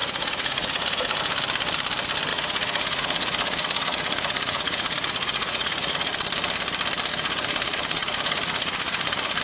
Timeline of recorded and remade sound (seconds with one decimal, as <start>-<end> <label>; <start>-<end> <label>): 0.0-1.2 remade; 1.2-2.3 recorded; 2.3-6.1 remade; 6.1-7.1 recorded; 7.1-9.4 remade